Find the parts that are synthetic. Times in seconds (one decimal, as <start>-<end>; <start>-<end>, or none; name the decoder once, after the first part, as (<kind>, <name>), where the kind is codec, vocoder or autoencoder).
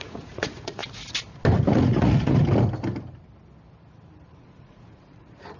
0.0-0.8 (vocoder, Vocos); 1.7-2.4; 4.3-5.6